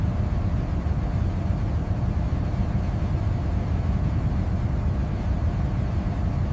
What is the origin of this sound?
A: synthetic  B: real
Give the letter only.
B